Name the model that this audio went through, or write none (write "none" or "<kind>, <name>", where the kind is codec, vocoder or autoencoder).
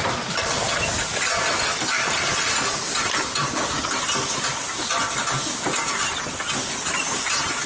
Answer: none